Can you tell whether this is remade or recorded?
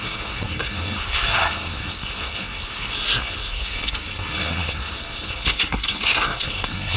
remade